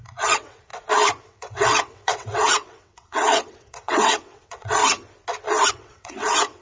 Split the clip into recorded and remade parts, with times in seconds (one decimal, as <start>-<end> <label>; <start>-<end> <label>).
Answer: 0.0-0.7 remade; 0.7-1.2 recorded; 1.2-4.8 remade; 4.8-5.7 recorded; 5.7-6.6 remade